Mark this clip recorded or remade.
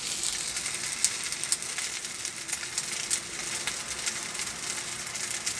recorded